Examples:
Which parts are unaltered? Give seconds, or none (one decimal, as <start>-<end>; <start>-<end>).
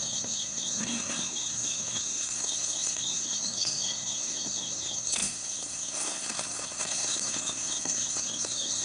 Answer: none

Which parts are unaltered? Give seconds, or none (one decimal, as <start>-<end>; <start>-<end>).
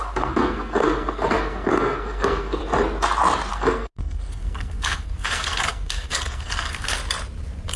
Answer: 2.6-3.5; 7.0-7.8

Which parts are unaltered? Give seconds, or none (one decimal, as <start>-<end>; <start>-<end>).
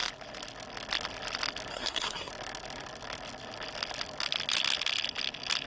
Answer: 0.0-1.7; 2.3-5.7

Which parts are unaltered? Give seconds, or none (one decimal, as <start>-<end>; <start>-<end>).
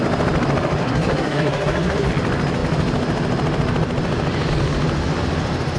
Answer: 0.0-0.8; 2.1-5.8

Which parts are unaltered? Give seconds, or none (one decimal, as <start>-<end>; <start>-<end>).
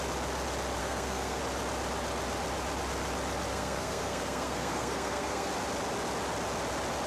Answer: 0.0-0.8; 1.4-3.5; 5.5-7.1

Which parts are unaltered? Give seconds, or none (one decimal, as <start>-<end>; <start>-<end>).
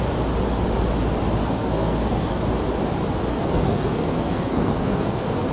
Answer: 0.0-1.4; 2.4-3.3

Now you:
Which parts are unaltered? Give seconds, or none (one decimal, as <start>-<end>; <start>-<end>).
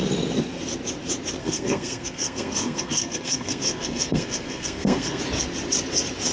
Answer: 0.0-1.4; 5.2-6.3